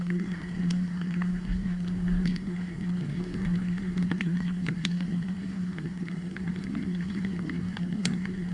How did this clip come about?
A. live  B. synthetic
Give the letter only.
B